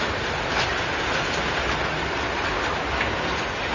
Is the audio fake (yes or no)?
no